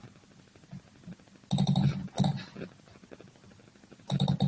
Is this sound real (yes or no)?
yes